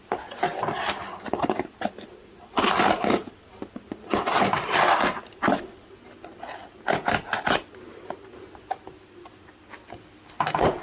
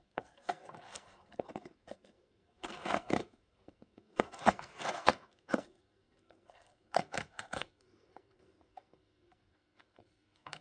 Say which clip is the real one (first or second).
first